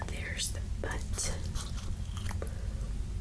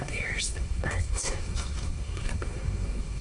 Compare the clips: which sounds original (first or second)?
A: first